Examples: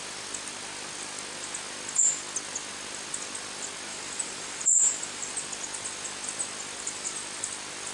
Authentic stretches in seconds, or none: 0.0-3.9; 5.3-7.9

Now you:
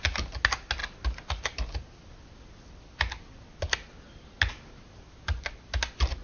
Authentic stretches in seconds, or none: 0.0-6.2